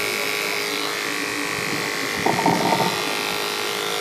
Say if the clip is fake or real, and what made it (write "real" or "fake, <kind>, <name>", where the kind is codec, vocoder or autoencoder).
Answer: real